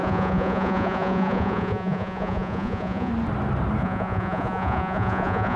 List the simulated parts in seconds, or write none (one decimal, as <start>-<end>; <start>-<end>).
0.0-3.1; 3.8-5.6